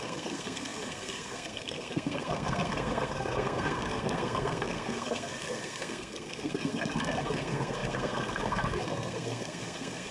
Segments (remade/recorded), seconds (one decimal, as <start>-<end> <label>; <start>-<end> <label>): 0.0-10.1 remade